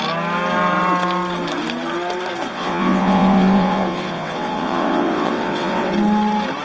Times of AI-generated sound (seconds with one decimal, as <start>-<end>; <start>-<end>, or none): 2.5-5.9